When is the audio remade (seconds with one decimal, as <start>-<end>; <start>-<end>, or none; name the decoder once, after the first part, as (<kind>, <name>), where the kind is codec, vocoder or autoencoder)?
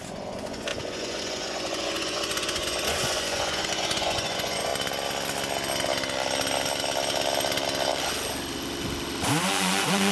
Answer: 0.0-4.7 (vocoder, Vocos); 9.5-10.1